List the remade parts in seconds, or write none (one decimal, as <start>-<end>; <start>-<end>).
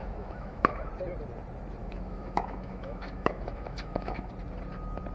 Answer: 0.0-0.9; 1.8-4.3